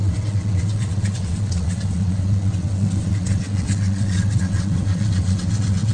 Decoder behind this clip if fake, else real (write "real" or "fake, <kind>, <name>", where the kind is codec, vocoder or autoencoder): fake, vocoder, WaveNeXt